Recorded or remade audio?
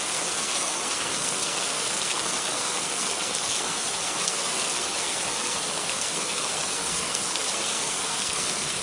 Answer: remade